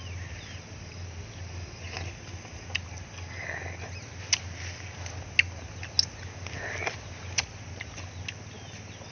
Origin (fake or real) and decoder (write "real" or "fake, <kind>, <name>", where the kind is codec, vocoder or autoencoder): real